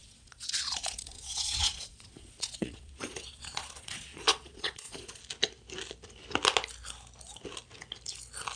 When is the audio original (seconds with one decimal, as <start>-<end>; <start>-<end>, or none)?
5.2-8.6